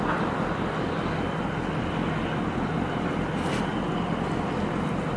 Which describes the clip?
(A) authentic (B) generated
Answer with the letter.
A